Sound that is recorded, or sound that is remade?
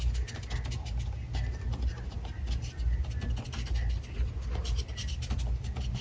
recorded